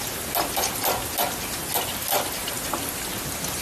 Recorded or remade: recorded